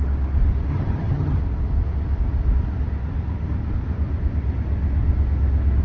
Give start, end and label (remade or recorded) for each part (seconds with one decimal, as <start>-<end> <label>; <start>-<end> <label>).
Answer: 0.0-0.7 recorded; 0.7-1.4 remade; 1.4-5.8 recorded